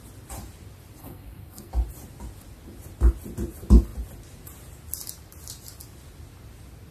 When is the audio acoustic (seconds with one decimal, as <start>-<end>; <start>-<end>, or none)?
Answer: 0.0-1.0; 1.7-6.9